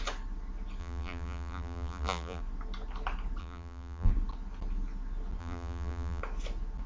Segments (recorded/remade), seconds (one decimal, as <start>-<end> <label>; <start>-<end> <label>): 0.0-0.8 recorded; 0.8-2.4 remade; 2.4-3.4 recorded; 3.4-4.1 remade; 4.1-5.4 recorded; 5.4-6.2 remade; 6.2-6.9 recorded